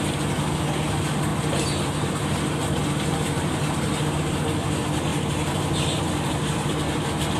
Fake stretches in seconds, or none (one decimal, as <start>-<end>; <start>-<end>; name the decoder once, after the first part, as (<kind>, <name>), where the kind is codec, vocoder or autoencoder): 1.3-2.1 (vocoder, BigVGAN v2); 2.8-3.9; 5.1-6.0